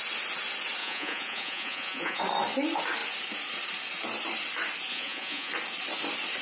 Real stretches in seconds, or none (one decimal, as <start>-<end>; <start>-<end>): 0.0-0.8; 2.2-4.9; 5.5-6.4